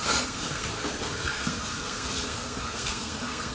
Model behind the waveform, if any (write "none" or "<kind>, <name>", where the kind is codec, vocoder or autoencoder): codec, SNAC